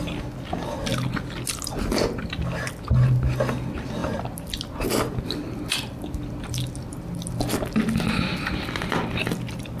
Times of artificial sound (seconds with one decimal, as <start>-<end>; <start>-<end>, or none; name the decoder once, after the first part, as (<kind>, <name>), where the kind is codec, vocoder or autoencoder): none